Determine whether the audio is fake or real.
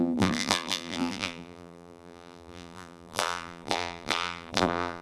fake